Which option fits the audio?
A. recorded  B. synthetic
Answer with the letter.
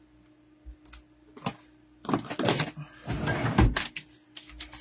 A